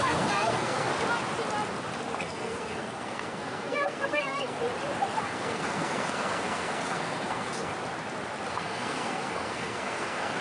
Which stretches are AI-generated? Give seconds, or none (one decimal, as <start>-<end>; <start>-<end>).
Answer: 0.0-0.9; 2.2-4.6; 5.2-7.7; 8.5-10.4